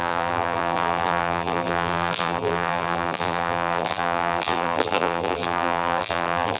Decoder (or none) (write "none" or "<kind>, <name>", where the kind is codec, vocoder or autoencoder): vocoder, BigVGAN v2